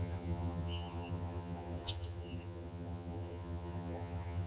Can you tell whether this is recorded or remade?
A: remade